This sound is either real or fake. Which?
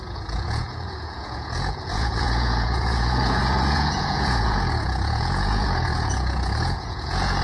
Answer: fake